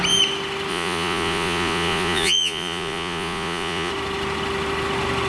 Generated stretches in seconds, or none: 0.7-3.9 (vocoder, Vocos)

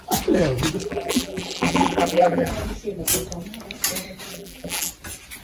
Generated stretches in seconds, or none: 0.8-2.5 (vocoder, BigVGAN v2); 4.3-4.9

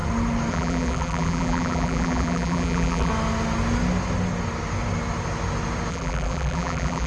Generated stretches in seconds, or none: 0.5-3.1 (vocoder, BigVGAN v2); 5.9-7.1

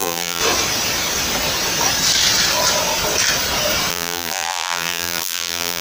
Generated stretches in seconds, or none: 0.0-0.4 (vocoder, BigVGAN v2); 3.9-5.8

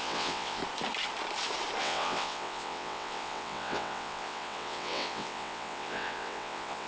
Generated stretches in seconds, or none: 0.0-0.6 (vocoder, WaveNeXt); 1.8-6.9

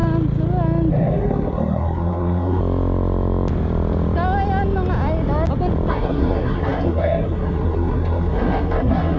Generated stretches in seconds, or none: 0.9-2.6 (codec, SNAC); 5.9-9.2

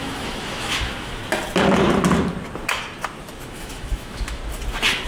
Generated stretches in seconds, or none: 0.0-1.2 (autoencoder, DAC-VAE); 3.5-4.4

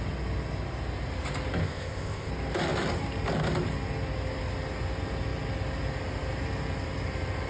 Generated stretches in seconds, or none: 1.6-2.3 (codec, ZipCodec)